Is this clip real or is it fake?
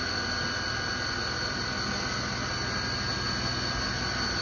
real